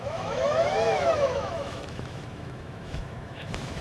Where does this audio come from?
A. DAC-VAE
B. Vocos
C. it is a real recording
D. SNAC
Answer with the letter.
A